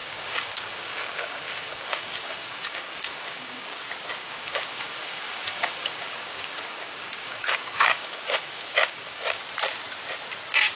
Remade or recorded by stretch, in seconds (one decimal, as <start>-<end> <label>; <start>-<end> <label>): 0.0-3.8 remade; 3.8-4.2 recorded; 4.2-9.4 remade; 9.4-10.8 recorded